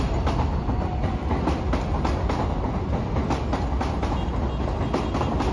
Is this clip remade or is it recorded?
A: recorded